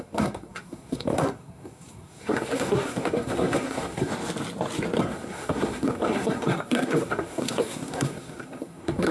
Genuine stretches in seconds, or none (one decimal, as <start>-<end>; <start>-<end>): 4.1-5.0